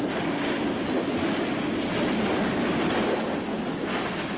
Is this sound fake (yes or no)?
no